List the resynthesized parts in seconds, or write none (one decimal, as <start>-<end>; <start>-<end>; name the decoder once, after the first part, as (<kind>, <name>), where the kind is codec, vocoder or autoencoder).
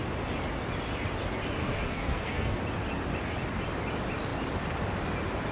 1.6-2.6 (codec, SNAC)